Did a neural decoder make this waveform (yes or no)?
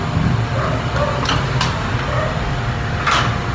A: no